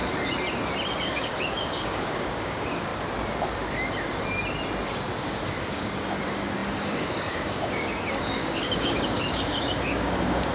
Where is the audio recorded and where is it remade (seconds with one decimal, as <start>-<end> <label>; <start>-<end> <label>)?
0.0-0.9 recorded; 0.9-2.9 remade; 2.9-5.6 recorded; 5.6-10.5 remade